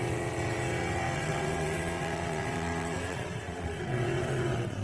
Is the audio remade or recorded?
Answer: remade